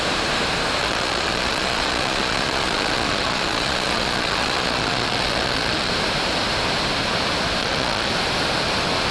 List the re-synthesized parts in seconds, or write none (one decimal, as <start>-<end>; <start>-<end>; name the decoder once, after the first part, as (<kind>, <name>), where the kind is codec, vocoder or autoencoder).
0.8-5.9 (vocoder, Vocos); 7.6-8.1